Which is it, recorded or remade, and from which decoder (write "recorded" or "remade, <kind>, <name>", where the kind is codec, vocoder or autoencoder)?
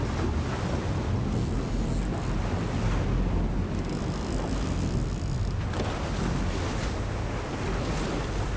recorded